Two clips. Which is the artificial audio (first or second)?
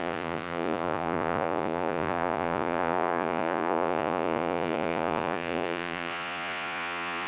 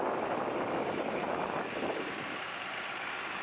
first